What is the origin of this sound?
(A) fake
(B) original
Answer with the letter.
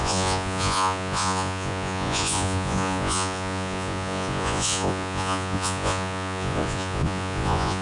A